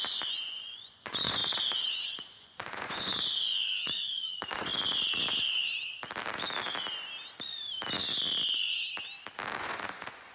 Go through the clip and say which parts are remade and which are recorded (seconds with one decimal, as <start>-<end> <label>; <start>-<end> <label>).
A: 0.0-4.7 remade; 4.7-9.6 recorded; 9.6-10.3 remade